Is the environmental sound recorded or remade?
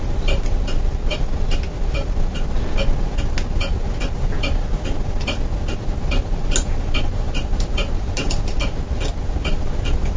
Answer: recorded